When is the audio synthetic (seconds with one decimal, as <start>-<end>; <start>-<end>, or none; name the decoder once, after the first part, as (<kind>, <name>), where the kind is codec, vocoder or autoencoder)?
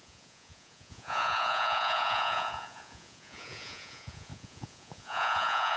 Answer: 0.0-5.8 (vocoder, Vocos)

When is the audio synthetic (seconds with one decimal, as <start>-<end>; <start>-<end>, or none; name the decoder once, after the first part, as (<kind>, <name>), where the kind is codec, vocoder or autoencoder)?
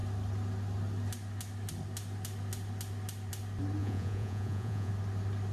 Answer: 3.8-4.9 (vocoder, Vocos)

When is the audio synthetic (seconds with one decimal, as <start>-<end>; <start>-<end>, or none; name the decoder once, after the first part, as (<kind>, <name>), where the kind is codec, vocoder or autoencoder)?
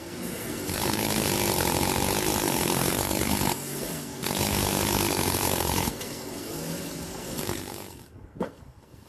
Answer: 0.0-1.3 (codec, SNAC); 2.4-9.1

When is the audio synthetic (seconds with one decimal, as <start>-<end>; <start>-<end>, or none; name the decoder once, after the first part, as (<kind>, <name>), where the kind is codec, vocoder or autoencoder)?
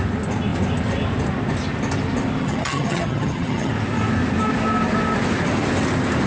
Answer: 2.4-3.7 (vocoder, HiFi-GAN)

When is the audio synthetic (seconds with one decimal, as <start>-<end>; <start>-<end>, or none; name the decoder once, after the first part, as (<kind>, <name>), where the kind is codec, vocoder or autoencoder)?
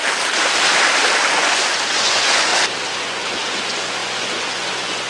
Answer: 1.3-2.5 (vocoder, Vocos); 3.0-5.1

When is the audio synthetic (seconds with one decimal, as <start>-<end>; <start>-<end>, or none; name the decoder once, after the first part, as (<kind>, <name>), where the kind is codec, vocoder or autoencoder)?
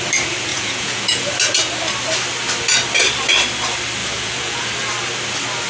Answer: 0.5-1.3 (vocoder, Vocos); 4.0-4.7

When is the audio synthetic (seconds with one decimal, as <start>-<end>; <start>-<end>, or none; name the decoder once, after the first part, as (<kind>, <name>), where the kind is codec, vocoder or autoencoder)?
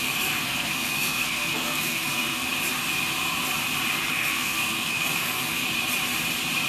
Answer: 0.0-2.5 (codec, SNAC); 4.1-5.6